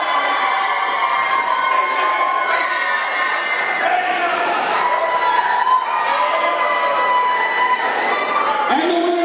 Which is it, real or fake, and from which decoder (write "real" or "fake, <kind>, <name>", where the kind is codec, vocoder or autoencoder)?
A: real